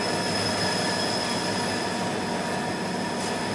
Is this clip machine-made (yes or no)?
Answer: no